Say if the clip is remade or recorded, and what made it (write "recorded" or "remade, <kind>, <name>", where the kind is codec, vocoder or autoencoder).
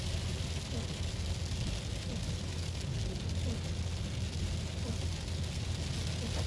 recorded